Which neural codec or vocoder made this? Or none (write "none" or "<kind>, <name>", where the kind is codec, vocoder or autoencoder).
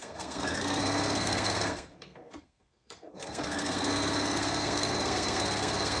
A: codec, SNAC